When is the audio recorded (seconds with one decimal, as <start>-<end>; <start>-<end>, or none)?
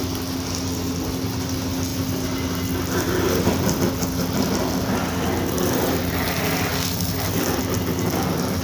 0.0-1.9; 2.8-6.7; 7.6-8.6